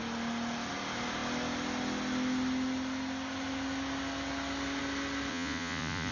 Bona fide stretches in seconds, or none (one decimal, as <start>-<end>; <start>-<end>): 0.0-5.3